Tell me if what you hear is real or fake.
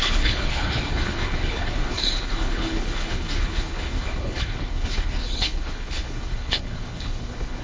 fake